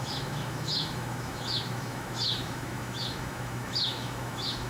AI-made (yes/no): yes